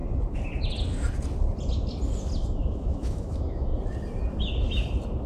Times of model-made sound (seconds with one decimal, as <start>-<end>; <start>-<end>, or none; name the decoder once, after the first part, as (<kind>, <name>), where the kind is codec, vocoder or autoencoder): 2.5-3.7 (autoencoder, DAC-VAE)